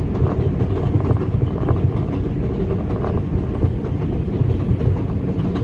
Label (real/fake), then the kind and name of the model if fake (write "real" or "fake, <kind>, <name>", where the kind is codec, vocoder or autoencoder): real